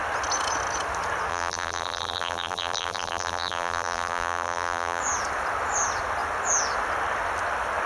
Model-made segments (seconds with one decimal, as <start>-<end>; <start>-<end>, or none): 1.3-5.0